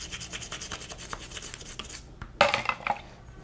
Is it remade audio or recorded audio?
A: recorded